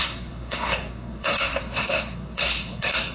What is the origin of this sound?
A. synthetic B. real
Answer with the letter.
A